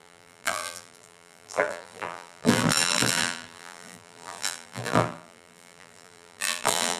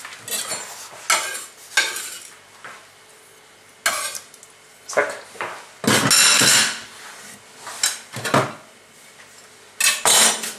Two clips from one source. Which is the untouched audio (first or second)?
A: second